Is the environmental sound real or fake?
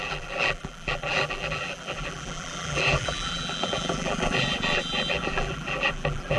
fake